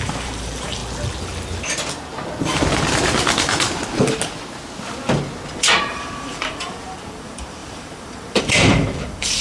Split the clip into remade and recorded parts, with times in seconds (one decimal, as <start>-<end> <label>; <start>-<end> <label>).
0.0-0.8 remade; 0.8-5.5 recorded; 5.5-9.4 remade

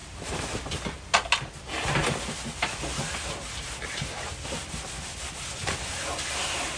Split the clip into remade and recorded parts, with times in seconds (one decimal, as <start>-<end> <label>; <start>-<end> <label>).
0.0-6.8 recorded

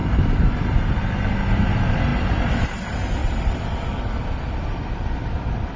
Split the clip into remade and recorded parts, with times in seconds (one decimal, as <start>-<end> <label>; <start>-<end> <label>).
0.0-3.2 recorded; 3.2-5.0 remade; 5.0-5.8 recorded

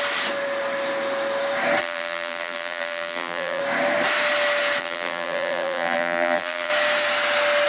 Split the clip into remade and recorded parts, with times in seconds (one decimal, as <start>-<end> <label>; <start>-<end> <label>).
0.0-1.8 recorded; 1.8-3.6 remade; 3.6-4.8 recorded; 4.8-6.7 remade; 6.7-7.7 recorded